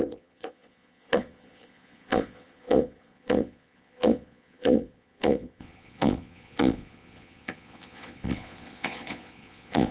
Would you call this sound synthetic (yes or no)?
yes